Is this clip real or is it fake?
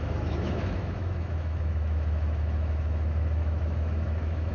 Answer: fake